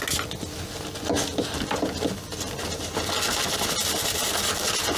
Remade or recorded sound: recorded